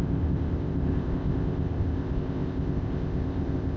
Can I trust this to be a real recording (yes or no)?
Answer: no